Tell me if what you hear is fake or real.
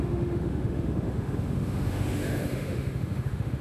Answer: fake